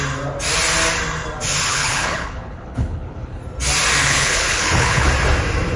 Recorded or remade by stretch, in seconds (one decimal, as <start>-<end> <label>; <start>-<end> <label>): 0.0-1.7 recorded; 1.7-3.4 remade; 3.4-4.0 recorded; 4.0-5.1 remade; 5.1-5.8 recorded